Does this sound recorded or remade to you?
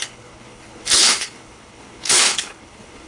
remade